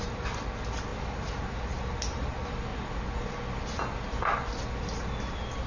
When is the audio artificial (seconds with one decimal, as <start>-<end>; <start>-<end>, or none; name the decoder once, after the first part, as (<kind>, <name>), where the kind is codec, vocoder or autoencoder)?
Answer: 0.9-1.6 (vocoder, BigVGAN v2)